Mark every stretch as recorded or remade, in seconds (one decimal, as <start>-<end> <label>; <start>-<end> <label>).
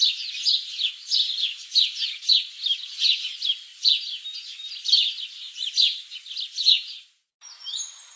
0.0-8.2 recorded